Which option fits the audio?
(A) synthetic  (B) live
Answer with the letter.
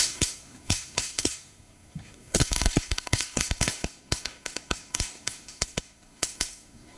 A